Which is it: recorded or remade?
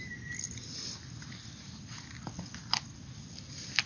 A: recorded